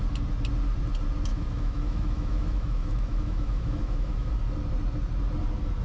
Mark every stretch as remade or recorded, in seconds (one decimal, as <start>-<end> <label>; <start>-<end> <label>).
0.0-1.3 recorded; 1.3-4.3 remade; 4.3-5.8 recorded